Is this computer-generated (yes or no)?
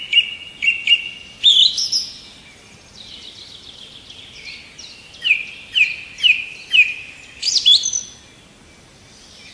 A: no